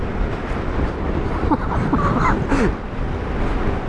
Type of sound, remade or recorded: recorded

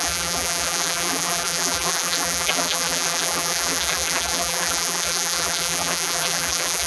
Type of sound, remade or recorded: remade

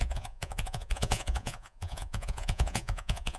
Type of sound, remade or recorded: remade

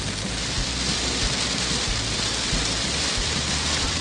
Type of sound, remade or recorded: remade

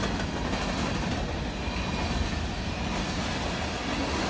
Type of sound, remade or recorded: recorded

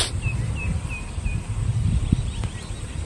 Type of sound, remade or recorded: recorded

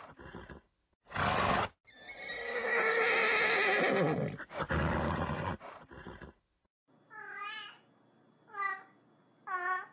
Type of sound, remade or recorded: recorded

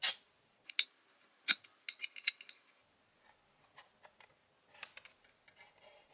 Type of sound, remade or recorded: recorded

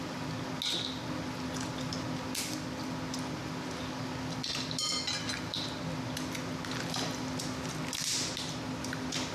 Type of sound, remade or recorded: recorded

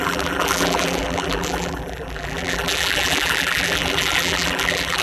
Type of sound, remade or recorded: remade